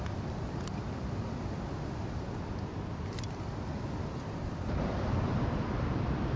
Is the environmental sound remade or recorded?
recorded